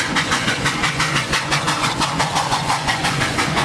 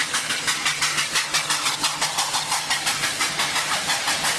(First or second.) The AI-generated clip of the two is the first